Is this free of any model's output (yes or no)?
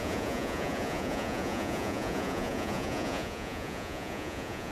no